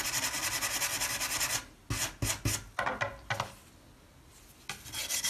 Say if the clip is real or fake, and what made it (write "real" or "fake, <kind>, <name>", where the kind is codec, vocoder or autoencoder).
real